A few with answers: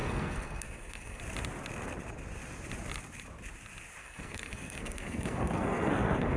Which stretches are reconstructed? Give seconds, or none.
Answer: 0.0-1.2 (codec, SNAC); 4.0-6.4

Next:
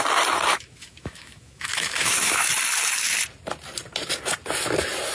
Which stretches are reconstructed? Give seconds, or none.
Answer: 0.5-2.5 (autoencoder, DAC-VAE)

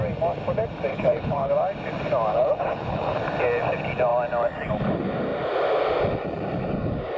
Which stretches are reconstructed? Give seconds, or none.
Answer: 0.9-1.5 (codec, HILCodec); 2.3-3.2

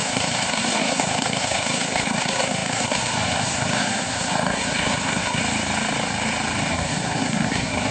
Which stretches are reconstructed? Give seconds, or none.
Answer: 0.0-5.4 (codec, SNAC); 6.7-7.9